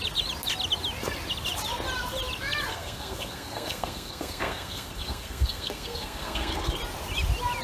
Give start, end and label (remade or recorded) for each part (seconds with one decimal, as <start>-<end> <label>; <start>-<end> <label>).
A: 0.0-2.7 recorded; 2.7-6.8 remade; 6.8-7.6 recorded